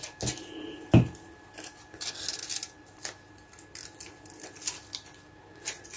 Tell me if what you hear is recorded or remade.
recorded